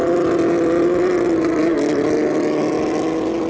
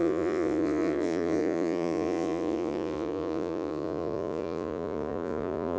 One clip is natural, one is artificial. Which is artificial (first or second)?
second